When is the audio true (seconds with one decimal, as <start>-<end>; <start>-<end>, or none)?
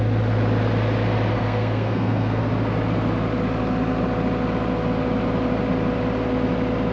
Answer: 0.0-1.3; 2.4-6.9